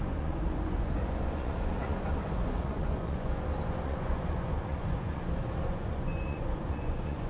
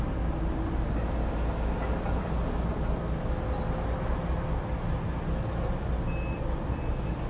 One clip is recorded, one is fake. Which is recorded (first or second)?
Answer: second